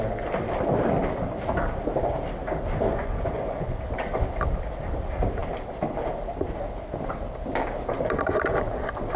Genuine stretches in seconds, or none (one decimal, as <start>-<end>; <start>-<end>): 0.0-2.9; 3.8-9.2